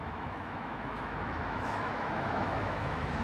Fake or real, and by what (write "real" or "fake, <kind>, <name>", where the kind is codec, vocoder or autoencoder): fake, autoencoder, DAC-VAE